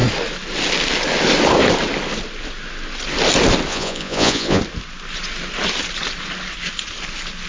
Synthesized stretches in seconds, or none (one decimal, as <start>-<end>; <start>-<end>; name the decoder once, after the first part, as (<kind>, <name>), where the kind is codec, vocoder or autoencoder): 3.7-4.6 (vocoder, Vocos)